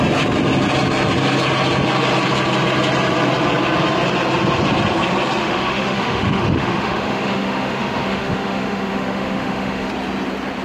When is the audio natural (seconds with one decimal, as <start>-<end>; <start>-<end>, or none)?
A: 0.0-5.4; 9.9-10.6